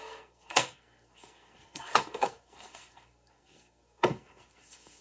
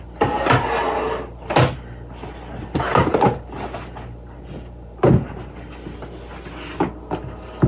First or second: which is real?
second